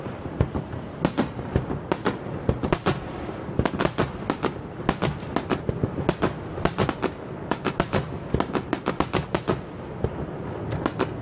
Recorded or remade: recorded